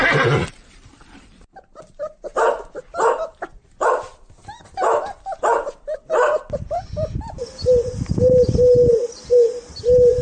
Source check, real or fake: real